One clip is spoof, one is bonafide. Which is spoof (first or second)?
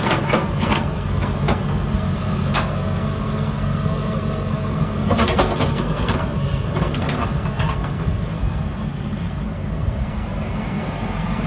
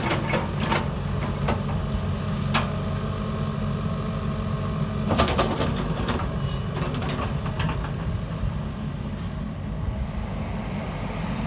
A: first